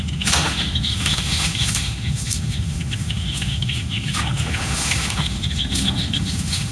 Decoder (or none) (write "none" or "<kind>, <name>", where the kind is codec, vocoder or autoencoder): autoencoder, DAC-VAE